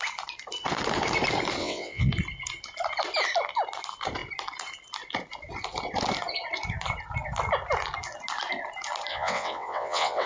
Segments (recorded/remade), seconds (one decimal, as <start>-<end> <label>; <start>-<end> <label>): 0.0-1.6 recorded; 1.6-2.1 remade; 2.1-9.1 recorded; 9.1-10.3 remade